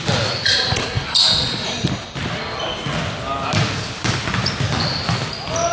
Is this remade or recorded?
recorded